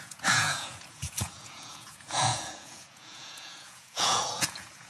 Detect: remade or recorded remade